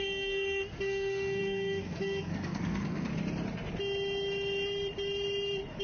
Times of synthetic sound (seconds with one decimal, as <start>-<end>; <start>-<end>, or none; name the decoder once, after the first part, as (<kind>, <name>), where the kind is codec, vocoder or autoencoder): 0.0-3.1 (codec, SNAC)